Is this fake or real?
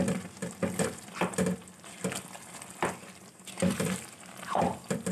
fake